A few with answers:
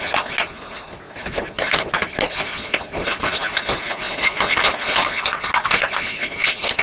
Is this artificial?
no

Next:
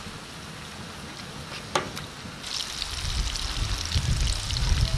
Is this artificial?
no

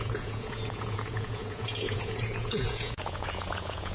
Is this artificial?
yes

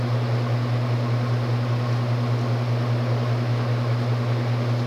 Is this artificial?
no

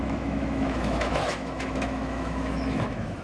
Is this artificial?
yes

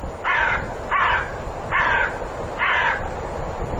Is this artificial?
no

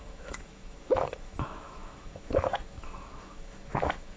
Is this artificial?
yes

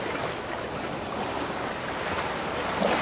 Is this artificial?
no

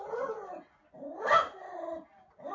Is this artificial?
no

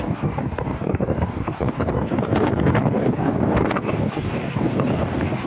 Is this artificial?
yes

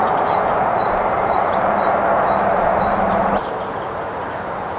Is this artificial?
yes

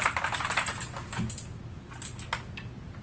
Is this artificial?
no